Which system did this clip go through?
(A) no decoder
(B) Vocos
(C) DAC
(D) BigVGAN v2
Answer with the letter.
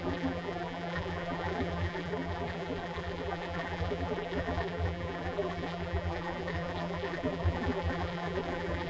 D